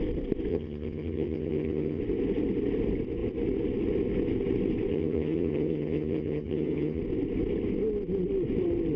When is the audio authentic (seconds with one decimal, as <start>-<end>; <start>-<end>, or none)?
0.0-0.5; 2.0-4.9; 7.0-9.0